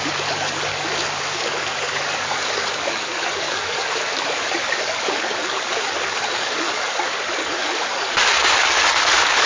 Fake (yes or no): yes